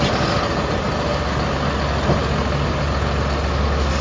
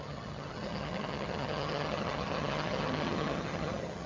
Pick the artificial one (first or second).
second